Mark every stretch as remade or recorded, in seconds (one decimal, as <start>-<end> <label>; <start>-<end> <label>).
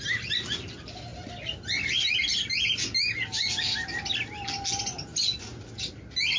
0.0-6.4 recorded